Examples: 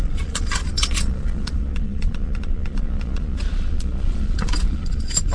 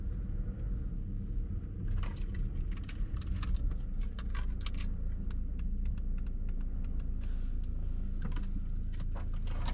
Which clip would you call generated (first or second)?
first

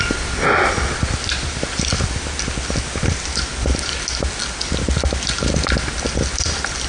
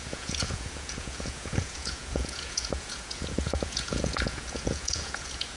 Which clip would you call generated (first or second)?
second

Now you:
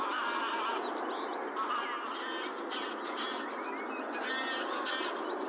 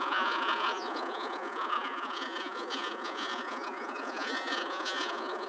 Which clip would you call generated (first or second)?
second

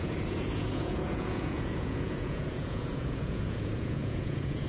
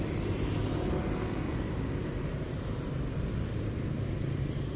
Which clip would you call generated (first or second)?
first